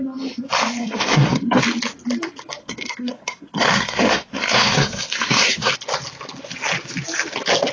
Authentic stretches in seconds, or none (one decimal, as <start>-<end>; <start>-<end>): 0.0-0.8; 1.6-2.6; 5.7-7.7

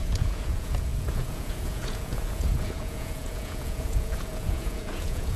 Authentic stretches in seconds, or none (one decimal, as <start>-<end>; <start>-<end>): none

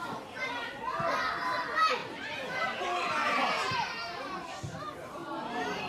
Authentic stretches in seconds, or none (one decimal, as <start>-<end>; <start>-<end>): 0.0-3.2; 4.6-5.0

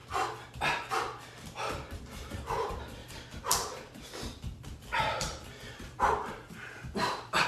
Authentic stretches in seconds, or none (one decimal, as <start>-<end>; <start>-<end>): 0.0-3.0

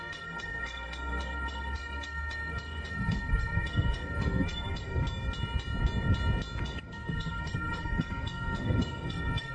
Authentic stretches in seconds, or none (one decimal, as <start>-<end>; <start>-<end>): 5.0-6.6

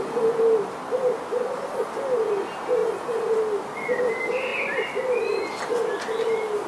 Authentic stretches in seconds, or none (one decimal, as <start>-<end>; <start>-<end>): 0.0-6.7

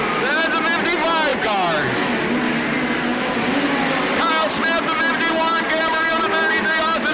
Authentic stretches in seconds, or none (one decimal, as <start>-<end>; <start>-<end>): 0.0-7.1